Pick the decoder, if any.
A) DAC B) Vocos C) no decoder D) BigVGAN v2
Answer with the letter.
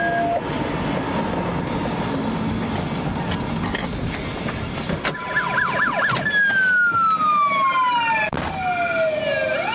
C